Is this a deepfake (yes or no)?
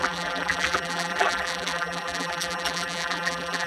yes